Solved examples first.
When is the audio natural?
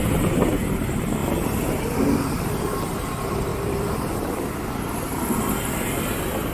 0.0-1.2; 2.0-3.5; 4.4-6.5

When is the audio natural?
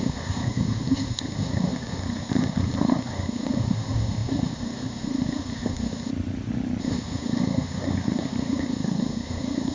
6.1-6.8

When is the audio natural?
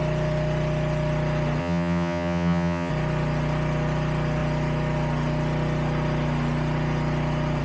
0.0-1.6; 2.9-7.6